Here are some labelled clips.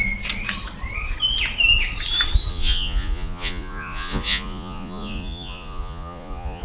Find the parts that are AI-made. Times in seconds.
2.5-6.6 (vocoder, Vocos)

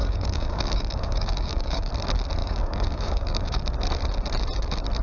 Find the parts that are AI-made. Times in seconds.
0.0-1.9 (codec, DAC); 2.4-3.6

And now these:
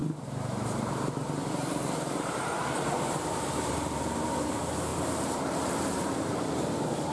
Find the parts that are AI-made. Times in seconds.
0.0-4.9 (vocoder, BigVGAN v2); 6.0-7.1

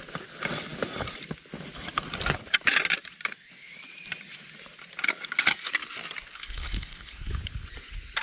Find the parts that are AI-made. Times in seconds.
6.3-7.4 (codec, HILCodec)